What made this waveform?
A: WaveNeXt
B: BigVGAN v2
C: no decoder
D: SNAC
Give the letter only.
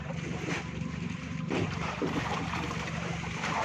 B